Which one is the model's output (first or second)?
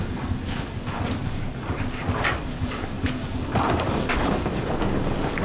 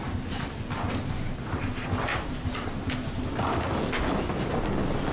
first